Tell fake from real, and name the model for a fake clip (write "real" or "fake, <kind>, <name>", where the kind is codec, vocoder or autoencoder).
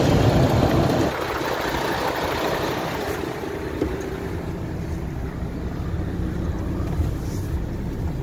real